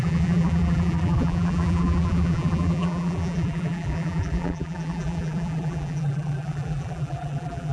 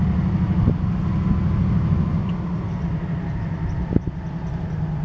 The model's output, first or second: first